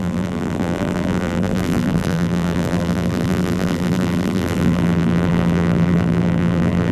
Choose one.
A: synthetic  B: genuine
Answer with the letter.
A